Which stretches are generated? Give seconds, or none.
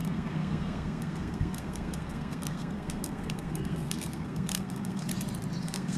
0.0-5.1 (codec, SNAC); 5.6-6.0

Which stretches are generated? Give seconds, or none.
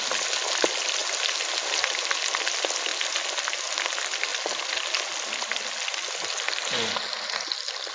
none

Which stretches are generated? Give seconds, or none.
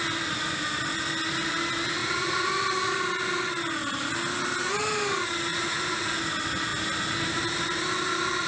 2.0-2.5 (vocoder, Vocos); 5.5-6.2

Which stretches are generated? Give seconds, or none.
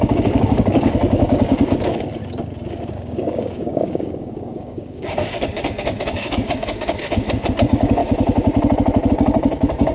0.0-2.2 (codec, DAC); 2.9-8.0; 9.1-9.9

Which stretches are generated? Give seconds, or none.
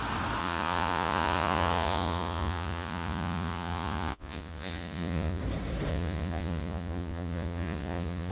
0.4-5.4 (vocoder, Vocos); 5.9-8.3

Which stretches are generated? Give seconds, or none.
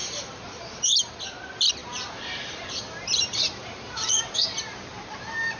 0.0-1.2 (vocoder, BigVGAN v2); 1.8-5.6